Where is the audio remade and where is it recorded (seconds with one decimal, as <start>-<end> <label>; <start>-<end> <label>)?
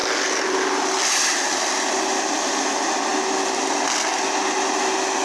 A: 0.0-5.2 recorded